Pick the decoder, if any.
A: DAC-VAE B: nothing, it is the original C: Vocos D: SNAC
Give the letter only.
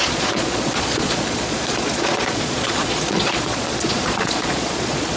C